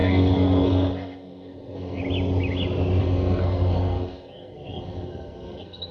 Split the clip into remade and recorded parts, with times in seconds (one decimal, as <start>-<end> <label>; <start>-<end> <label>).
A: 0.0-2.0 remade; 2.0-3.0 recorded; 3.0-5.9 remade